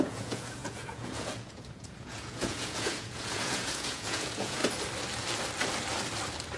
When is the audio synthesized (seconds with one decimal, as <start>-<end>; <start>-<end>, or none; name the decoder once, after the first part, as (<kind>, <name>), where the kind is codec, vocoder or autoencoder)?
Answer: 0.0-4.6 (vocoder, Vocos)